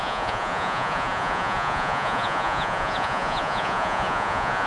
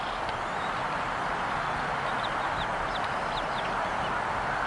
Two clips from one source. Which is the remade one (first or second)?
first